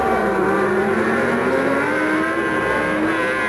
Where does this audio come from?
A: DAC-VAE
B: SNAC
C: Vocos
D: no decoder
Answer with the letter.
D